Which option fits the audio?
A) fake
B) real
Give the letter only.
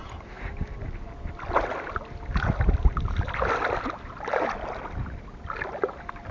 B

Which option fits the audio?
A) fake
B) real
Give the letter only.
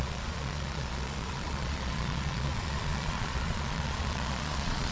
A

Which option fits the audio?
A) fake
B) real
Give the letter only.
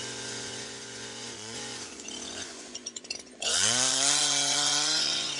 A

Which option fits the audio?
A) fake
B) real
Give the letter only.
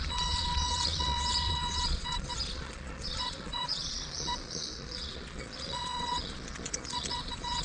A